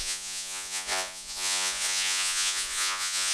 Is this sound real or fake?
fake